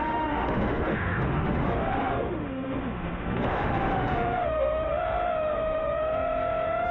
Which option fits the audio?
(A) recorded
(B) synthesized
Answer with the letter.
B